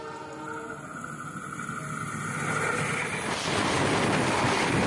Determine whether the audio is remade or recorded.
recorded